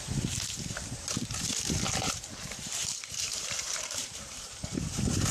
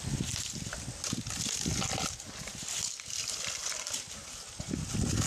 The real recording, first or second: second